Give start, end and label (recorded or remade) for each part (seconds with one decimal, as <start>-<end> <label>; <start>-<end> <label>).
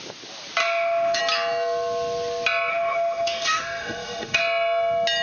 0.0-0.6 recorded; 0.6-1.2 remade; 1.2-2.7 recorded; 2.7-4.4 remade; 4.4-5.2 recorded